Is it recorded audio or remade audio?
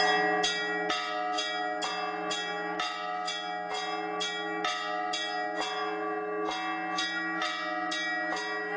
recorded